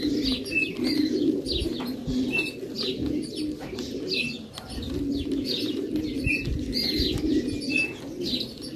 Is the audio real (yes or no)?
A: yes